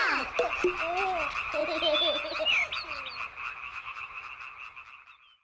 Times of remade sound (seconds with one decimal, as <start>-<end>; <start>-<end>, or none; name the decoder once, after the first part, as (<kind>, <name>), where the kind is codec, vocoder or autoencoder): 3.7-4.3 (autoencoder, DAC-VAE)